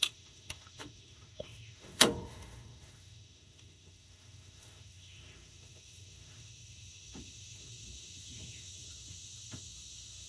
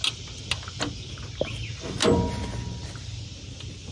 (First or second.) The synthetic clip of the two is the first